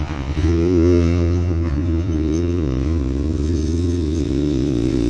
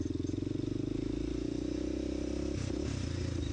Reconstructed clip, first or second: first